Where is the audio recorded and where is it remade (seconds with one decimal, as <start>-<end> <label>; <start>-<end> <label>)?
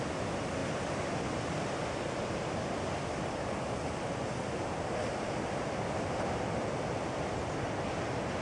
0.0-8.4 recorded